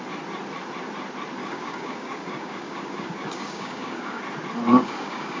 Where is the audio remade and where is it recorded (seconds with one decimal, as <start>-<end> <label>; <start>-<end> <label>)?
0.0-1.4 recorded; 1.4-4.2 remade; 4.2-4.7 recorded; 4.7-5.4 remade